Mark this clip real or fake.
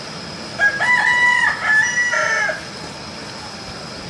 real